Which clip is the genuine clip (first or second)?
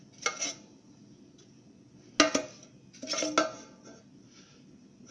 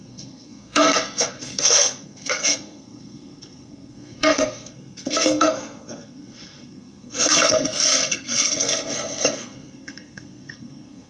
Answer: first